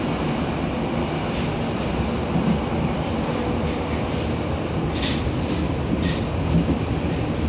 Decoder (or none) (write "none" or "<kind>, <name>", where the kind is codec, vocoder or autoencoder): none